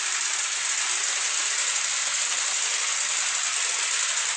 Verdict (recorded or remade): recorded